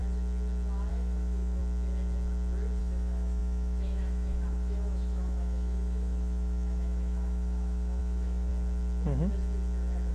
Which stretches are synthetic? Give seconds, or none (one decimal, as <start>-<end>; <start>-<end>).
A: 0.9-1.6; 2.8-8.5

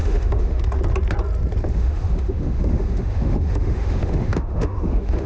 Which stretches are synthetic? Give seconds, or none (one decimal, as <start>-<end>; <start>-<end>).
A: 0.0-0.6; 1.7-5.3

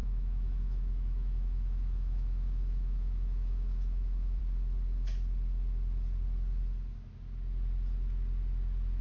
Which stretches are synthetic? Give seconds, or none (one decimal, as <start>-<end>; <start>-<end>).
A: 0.0-4.4

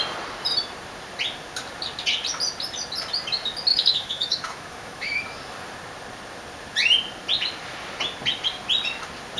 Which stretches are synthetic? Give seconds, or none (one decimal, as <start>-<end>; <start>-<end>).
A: 3.7-5.2

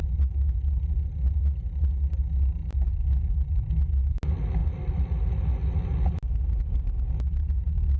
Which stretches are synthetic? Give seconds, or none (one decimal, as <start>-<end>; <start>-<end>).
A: none

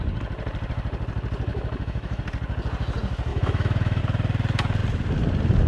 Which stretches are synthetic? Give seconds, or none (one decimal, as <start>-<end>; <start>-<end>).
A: 1.5-2.2; 3.3-4.0